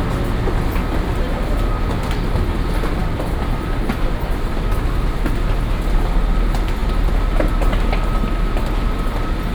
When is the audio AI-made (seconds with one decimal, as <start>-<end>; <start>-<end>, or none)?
3.0-4.6; 8.2-8.7